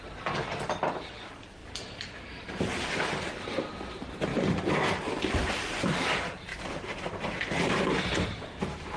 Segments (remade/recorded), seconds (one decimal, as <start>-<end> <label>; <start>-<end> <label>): 0.0-4.3 recorded; 4.3-5.5 remade; 5.5-6.5 recorded; 6.5-7.7 remade; 7.7-9.0 recorded